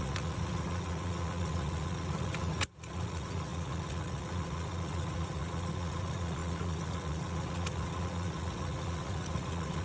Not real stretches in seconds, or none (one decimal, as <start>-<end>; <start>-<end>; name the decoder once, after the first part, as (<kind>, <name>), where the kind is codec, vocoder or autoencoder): 0.0-9.8 (vocoder, Vocos)